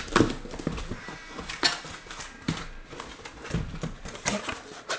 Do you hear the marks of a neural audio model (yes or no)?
no